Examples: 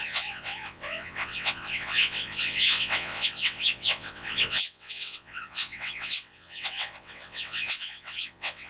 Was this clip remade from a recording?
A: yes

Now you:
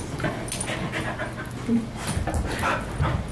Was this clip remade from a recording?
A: no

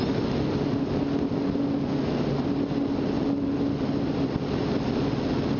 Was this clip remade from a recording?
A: no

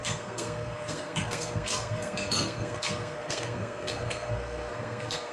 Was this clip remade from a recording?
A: yes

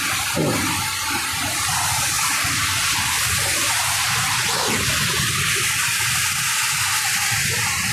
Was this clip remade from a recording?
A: no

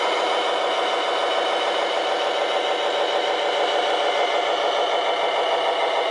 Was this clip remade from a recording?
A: no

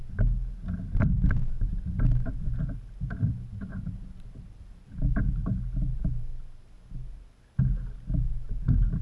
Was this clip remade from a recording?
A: no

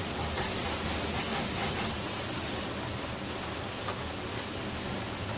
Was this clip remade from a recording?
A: no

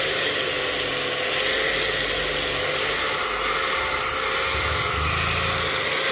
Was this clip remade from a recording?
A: no